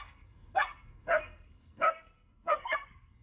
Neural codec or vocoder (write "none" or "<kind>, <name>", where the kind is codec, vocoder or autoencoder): codec, SNAC